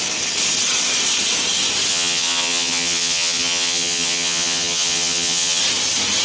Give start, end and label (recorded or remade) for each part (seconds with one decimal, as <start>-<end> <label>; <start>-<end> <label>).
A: 0.0-1.9 recorded; 1.9-5.6 remade; 5.6-6.2 recorded